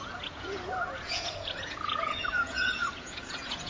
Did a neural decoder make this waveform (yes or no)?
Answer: yes